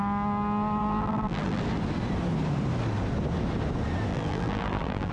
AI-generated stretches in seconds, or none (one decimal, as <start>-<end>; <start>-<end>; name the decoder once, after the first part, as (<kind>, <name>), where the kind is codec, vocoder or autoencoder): 0.8-1.6 (vocoder, BigVGAN v2); 4.1-5.1